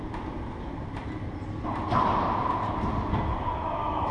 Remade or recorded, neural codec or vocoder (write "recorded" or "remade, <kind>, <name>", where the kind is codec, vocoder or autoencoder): recorded